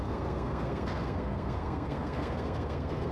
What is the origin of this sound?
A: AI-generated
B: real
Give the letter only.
A